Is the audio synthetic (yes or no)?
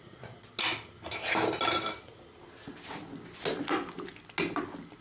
no